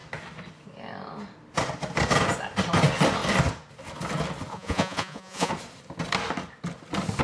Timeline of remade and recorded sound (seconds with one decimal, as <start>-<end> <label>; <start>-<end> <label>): 0.0-4.5 recorded; 4.5-5.5 remade; 5.5-7.2 recorded